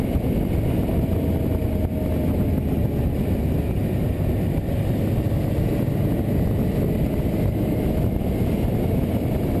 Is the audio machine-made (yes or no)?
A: no